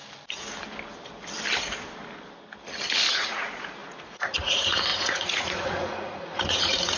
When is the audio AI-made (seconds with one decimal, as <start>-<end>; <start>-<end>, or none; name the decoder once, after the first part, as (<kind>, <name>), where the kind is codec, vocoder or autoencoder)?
3.1-7.0 (vocoder, Vocos)